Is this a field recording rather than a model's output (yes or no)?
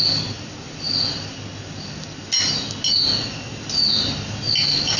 yes